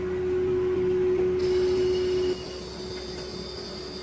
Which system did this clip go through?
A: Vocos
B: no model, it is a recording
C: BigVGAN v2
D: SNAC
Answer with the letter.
B